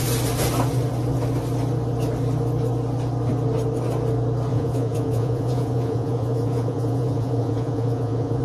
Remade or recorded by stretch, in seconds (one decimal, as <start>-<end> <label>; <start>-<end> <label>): 0.0-4.5 recorded; 4.5-8.4 remade